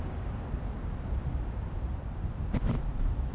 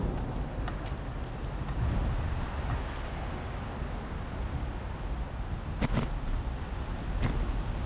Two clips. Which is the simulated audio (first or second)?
first